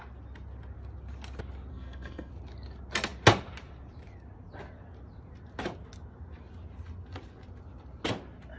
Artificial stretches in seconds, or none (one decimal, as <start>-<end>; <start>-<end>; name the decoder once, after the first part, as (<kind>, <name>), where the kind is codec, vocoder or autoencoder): 1.7-2.3 (codec, SNAC)